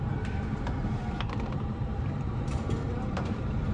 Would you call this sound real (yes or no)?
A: no